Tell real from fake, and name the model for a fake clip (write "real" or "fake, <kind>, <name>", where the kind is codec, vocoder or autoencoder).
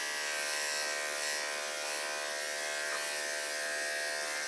real